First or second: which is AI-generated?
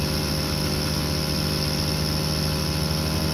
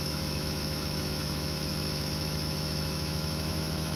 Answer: second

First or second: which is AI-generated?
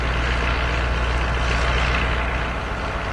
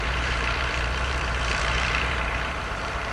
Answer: second